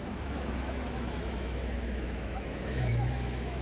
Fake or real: fake